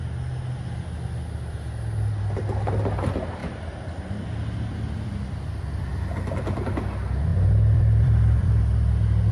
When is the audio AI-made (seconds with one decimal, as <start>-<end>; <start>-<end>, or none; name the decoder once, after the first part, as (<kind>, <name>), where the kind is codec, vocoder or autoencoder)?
3.4-5.4 (vocoder, BigVGAN v2); 7.3-8.6